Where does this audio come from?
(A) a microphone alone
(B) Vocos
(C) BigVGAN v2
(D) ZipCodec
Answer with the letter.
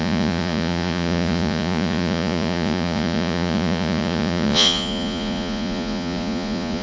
B